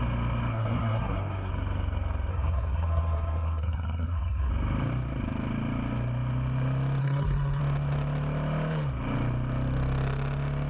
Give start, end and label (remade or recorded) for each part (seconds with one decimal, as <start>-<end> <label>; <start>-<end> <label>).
0.0-0.5 recorded; 0.5-1.5 remade; 1.5-2.3 recorded; 2.3-4.5 remade; 4.5-7.0 recorded; 7.0-7.6 remade; 7.6-10.7 recorded